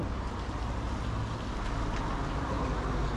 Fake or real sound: real